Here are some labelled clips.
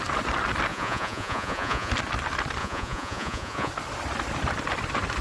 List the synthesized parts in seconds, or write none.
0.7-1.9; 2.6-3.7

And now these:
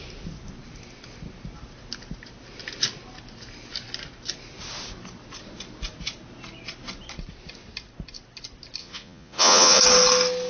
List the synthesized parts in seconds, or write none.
8.8-9.8